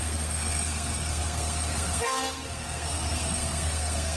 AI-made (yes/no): yes